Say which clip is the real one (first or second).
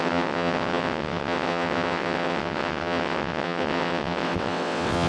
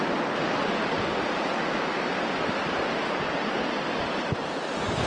second